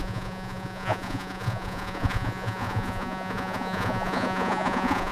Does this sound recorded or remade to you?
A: remade